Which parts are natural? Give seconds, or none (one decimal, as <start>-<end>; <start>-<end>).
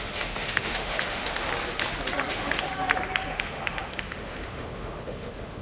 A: 1.5-2.3; 2.7-3.3